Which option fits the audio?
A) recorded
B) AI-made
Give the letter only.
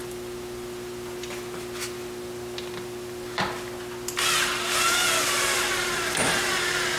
A